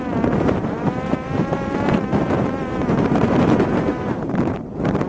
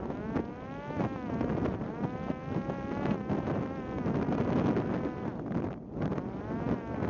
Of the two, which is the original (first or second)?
second